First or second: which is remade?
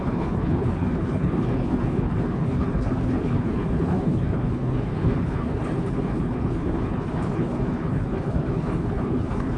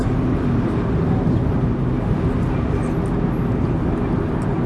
first